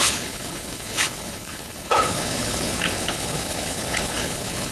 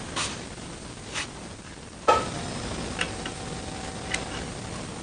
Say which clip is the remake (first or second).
first